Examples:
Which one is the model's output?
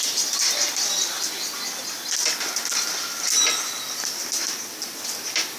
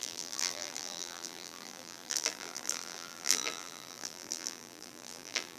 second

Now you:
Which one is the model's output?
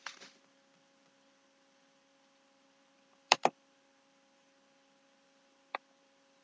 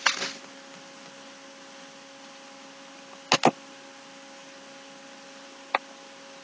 first